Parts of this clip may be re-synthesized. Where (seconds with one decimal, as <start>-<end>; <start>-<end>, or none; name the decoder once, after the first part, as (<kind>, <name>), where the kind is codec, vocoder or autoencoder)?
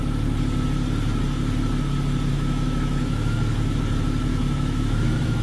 2.3-3.8 (autoencoder, DAC-VAE); 4.3-5.4